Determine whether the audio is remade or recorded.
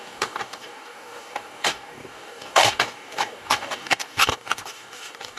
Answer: remade